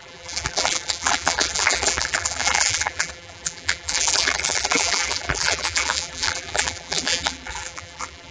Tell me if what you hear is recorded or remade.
remade